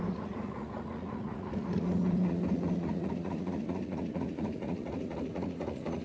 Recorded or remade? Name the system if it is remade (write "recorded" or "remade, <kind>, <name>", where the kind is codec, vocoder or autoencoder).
remade, vocoder, Vocos